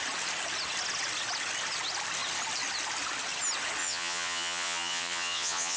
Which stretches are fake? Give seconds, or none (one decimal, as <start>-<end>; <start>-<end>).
3.8-5.8